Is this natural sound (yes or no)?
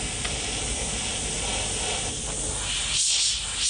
yes